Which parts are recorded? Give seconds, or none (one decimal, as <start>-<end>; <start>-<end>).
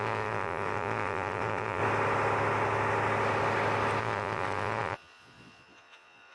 1.8-4.0